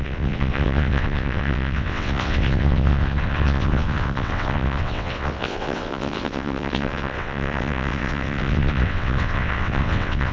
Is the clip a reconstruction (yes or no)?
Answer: yes